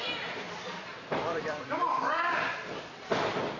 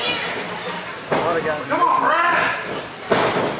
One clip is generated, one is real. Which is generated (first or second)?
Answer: first